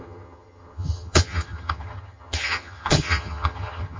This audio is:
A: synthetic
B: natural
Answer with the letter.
A